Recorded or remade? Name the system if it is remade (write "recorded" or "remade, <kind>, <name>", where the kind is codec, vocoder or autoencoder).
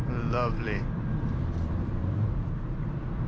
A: remade, vocoder, BigVGAN v2